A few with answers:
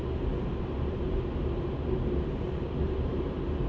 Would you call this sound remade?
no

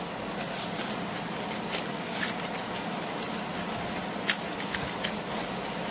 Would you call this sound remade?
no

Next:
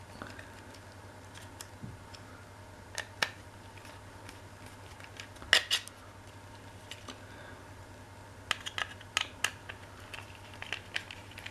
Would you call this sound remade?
no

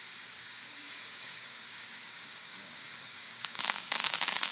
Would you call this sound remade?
yes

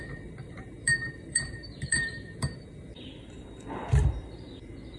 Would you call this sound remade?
yes